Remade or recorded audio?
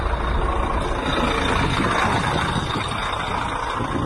recorded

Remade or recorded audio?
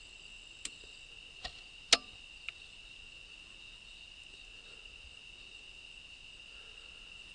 recorded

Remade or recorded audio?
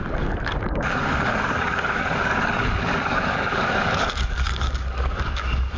remade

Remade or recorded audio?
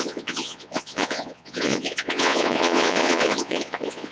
remade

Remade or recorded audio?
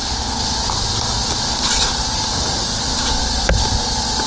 recorded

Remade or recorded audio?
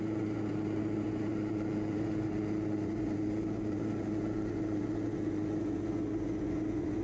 remade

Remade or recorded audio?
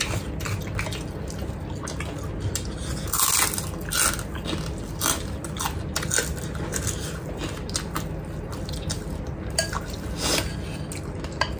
recorded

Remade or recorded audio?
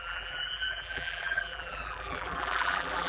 remade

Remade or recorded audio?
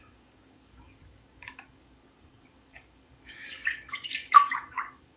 remade